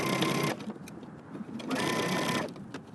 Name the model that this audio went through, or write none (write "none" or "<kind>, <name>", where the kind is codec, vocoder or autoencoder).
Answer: none